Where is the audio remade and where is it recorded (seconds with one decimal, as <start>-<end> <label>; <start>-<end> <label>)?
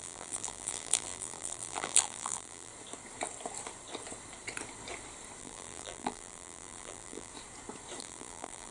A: 0.0-2.7 remade; 2.7-5.4 recorded; 5.4-7.3 remade; 7.3-8.0 recorded; 8.0-8.7 remade